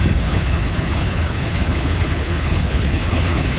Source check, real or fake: fake